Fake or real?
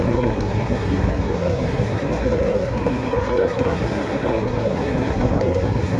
fake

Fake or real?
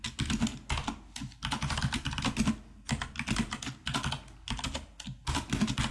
real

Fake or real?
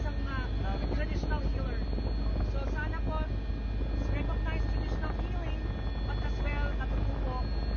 real